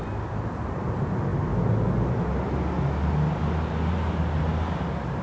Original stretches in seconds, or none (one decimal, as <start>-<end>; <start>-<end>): 0.0-1.3; 4.4-5.2